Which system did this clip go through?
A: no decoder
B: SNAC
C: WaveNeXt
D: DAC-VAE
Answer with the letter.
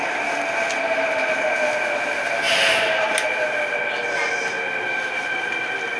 A